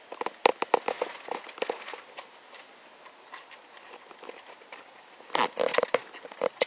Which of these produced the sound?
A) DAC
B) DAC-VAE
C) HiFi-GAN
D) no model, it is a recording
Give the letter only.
D